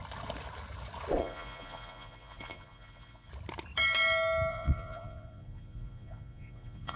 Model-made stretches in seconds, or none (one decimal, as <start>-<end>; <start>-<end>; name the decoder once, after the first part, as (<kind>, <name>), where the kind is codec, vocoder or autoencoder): 1.2-3.3 (vocoder, Vocos); 4.5-7.0